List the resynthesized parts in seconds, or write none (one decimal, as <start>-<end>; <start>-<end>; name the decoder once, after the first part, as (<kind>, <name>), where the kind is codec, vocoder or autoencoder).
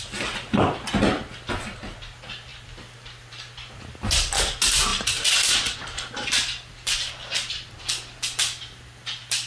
none